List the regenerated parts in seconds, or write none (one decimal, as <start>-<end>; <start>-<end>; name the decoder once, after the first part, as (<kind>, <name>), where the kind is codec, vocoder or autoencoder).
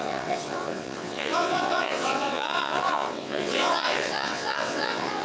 0.0-5.2 (vocoder, WaveNeXt)